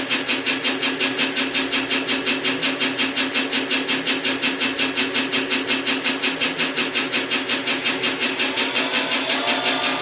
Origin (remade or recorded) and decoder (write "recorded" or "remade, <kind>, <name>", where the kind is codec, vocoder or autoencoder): recorded